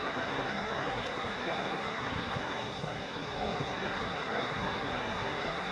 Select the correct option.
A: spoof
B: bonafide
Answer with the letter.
A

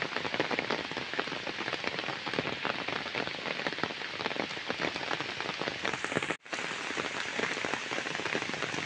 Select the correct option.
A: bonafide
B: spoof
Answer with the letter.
A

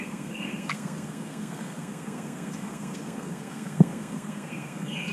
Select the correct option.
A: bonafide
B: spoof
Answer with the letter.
B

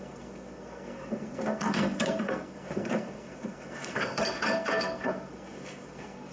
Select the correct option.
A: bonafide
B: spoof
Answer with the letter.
B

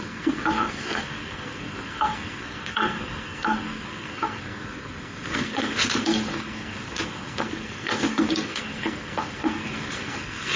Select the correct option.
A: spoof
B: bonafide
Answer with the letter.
A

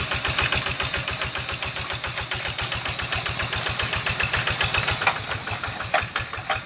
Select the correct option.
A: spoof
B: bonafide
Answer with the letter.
B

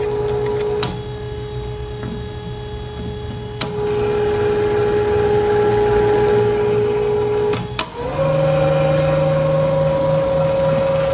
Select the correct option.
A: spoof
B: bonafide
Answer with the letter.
B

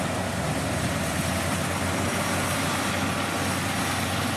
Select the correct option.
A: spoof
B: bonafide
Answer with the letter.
B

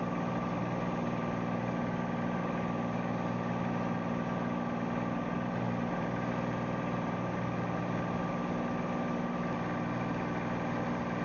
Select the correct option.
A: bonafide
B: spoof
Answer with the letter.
A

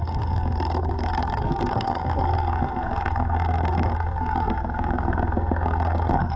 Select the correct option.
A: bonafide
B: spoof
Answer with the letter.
B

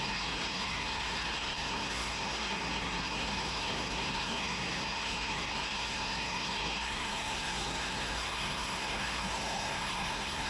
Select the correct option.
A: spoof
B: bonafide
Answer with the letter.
A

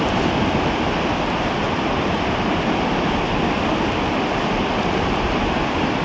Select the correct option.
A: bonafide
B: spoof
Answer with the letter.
A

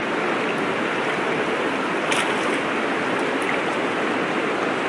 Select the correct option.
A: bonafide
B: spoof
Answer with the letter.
A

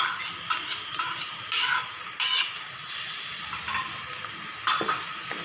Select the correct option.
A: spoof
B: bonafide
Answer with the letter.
B